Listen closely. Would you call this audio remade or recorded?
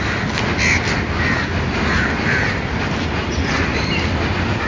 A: recorded